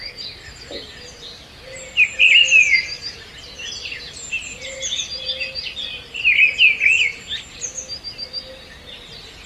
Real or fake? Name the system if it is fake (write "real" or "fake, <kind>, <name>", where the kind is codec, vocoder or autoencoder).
real